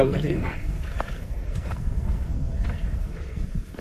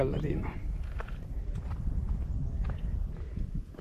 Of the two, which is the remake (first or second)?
first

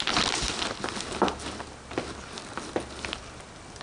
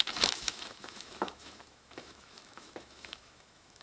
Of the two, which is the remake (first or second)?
second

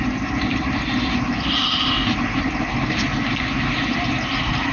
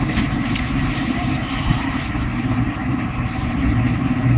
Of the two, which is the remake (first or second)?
second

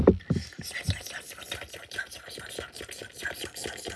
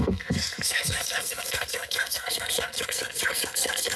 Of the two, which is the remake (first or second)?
second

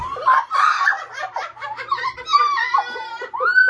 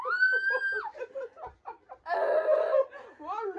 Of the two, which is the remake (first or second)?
first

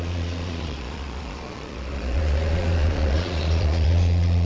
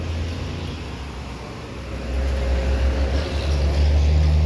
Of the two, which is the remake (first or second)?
first